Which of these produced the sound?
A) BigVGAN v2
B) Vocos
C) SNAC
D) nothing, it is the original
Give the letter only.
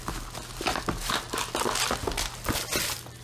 D